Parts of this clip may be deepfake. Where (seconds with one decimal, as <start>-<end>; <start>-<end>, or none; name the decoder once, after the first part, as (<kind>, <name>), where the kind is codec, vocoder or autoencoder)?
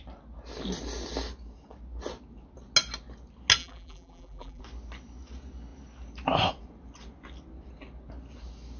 3.6-4.6 (vocoder, BigVGAN v2)